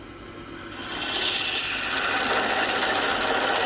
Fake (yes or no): no